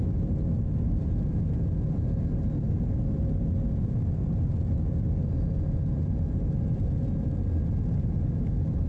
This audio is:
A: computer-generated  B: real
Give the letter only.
B